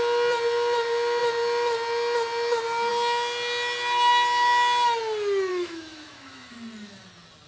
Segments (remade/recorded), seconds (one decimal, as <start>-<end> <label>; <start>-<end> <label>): 0.0-5.5 recorded; 5.5-6.5 remade; 6.5-7.5 recorded